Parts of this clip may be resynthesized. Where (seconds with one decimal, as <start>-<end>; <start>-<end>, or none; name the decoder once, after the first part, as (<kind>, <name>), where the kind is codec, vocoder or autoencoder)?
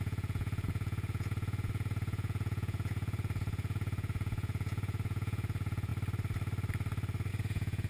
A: 0.0-5.9 (vocoder, Vocos); 7.3-7.9